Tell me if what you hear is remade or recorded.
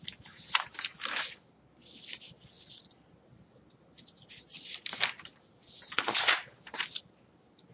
recorded